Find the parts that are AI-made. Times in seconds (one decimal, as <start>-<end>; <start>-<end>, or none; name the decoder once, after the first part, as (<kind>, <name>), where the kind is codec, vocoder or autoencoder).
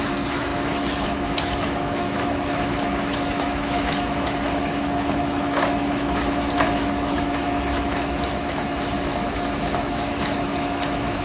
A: 0.0-11.2 (autoencoder, DAC-VAE)